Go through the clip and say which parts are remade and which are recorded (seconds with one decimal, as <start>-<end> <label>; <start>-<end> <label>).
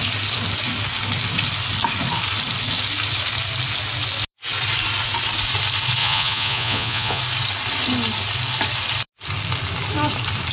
0.0-6.0 recorded; 6.0-7.2 remade; 7.2-10.5 recorded